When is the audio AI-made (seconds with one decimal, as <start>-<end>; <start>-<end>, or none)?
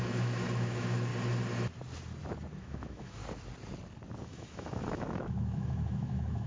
0.0-1.1; 2.6-3.2; 4.2-6.5